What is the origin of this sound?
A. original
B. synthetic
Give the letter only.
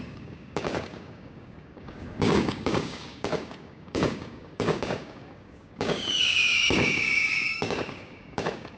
B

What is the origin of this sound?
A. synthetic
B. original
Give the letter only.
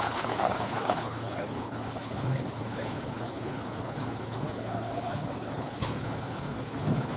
A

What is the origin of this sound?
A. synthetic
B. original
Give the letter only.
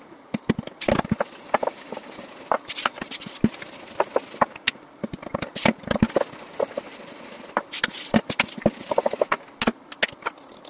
B